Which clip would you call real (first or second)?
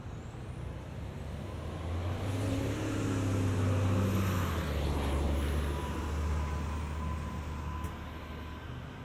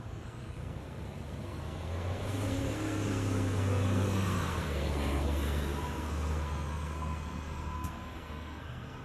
first